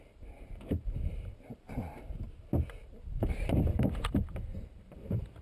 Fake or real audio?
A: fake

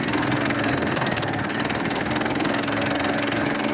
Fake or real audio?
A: fake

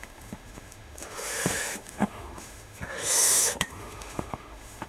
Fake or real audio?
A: fake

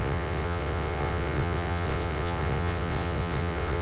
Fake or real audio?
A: fake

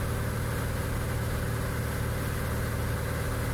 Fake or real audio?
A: real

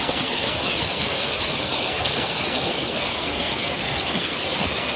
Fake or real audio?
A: fake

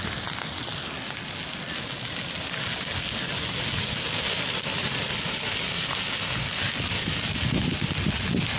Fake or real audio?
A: real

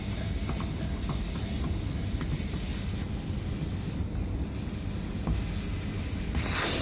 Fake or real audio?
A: real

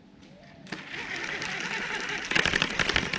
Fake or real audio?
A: real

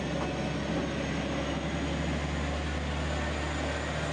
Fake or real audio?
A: real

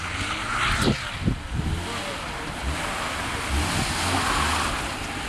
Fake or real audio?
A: real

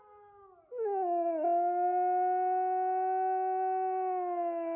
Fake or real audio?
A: real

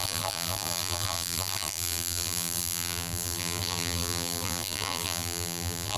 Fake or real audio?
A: fake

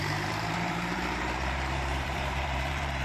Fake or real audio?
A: fake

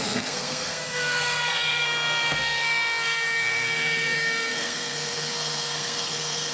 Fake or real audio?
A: fake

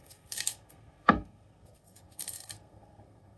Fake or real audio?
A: fake